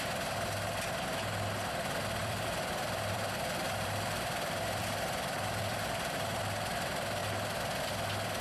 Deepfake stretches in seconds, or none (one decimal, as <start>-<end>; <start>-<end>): 2.2-6.4